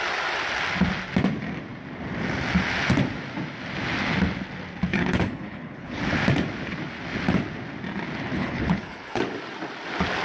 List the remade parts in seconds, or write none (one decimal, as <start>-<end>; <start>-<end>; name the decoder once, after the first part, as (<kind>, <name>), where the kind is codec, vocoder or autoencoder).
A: 4.9-6.0 (codec, HILCodec); 8.3-9.2